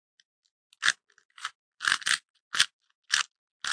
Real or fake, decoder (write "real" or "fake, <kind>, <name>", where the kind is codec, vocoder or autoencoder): real